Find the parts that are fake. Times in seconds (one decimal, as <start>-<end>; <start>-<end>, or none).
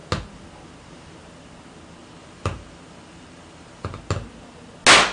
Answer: 2.0-4.0